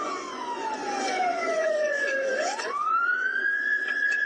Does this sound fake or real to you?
fake